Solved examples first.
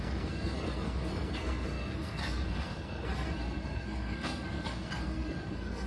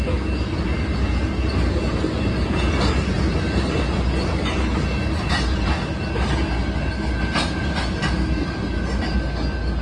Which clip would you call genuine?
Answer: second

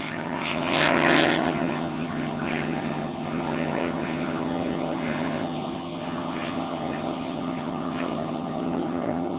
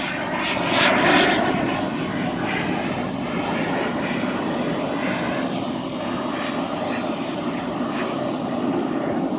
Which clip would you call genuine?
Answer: second